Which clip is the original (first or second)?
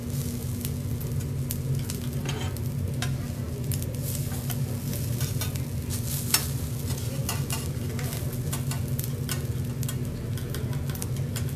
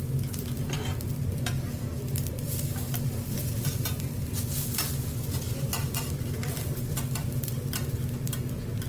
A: first